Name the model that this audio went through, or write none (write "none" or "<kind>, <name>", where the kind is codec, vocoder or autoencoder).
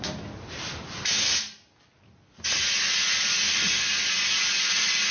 none